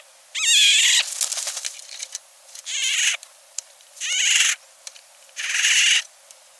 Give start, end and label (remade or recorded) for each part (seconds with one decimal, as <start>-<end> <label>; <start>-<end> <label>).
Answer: 0.0-2.2 recorded; 2.2-4.5 remade; 4.5-6.6 recorded